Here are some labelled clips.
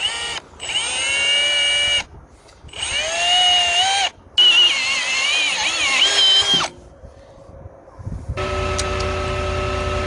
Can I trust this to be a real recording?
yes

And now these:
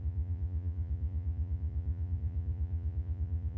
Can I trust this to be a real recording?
no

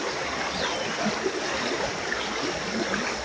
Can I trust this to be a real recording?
yes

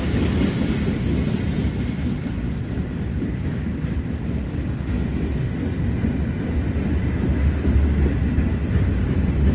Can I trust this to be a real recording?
yes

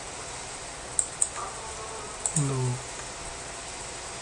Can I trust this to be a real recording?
yes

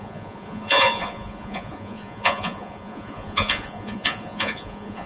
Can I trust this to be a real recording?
no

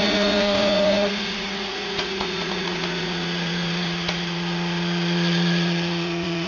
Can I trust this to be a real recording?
no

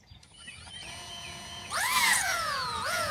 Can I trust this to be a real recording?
no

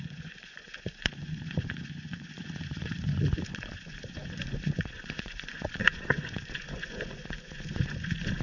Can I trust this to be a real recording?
no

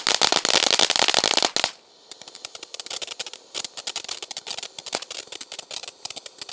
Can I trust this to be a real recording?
yes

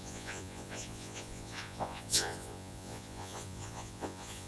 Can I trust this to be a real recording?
no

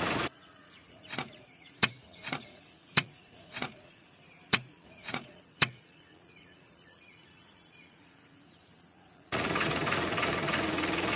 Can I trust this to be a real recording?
no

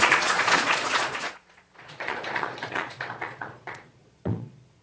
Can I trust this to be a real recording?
no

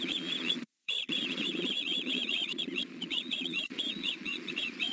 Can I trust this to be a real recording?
no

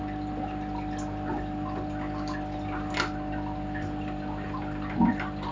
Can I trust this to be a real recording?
yes